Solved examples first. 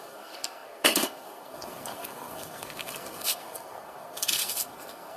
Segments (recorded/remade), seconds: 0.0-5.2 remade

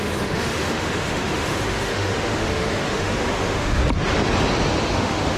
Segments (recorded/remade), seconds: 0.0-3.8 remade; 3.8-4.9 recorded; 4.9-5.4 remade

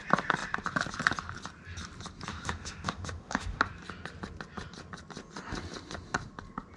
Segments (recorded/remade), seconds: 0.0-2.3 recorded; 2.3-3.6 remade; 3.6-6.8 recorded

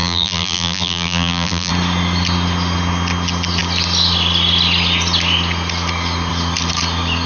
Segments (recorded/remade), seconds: 0.0-1.7 remade; 1.7-7.3 recorded

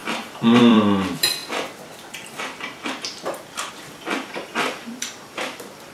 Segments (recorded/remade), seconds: 0.0-1.4 remade; 1.4-3.7 recorded; 3.7-5.9 remade

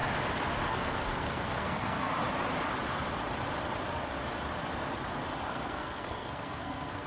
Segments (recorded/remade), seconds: 0.0-0.7 recorded; 0.7-2.1 remade; 2.1-5.5 recorded; 5.5-7.1 remade